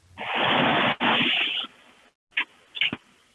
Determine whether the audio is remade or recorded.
recorded